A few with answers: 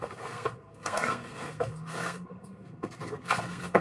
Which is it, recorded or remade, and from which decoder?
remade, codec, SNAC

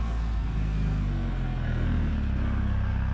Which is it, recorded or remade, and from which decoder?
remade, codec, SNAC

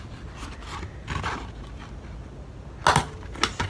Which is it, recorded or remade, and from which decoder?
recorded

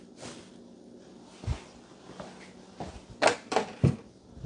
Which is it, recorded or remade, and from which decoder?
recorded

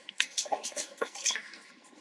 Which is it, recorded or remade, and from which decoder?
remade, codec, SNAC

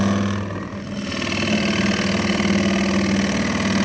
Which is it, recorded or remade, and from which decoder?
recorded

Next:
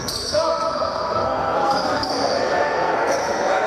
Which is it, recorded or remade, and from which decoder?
remade, codec, SNAC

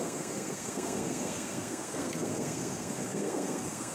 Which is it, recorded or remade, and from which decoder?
remade, codec, SNAC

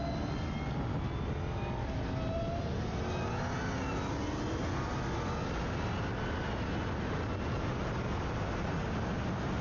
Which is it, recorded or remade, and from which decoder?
recorded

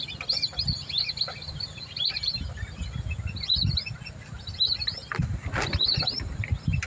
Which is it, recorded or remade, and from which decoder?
recorded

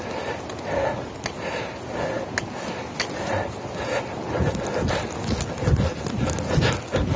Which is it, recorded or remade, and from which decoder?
recorded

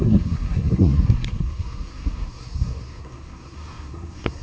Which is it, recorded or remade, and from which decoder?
remade, codec, SNAC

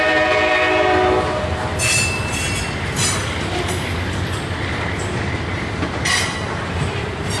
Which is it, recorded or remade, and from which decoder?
recorded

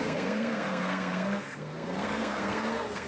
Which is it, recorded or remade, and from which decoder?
remade, codec, SNAC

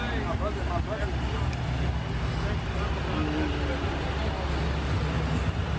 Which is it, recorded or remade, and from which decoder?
recorded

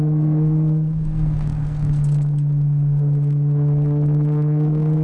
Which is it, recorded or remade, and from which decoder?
remade, codec, SNAC